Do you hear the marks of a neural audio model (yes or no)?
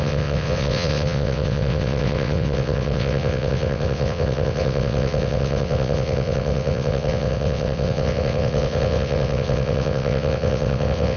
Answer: yes